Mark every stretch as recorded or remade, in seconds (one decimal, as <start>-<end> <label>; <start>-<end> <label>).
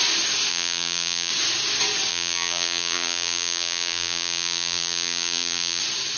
0.0-0.5 recorded; 0.5-1.3 remade; 1.3-2.1 recorded; 2.1-5.8 remade; 5.8-6.2 recorded